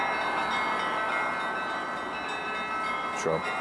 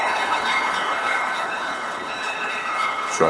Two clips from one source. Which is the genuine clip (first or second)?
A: first